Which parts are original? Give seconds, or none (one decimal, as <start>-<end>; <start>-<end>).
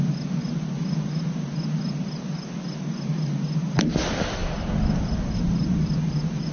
0.0-6.5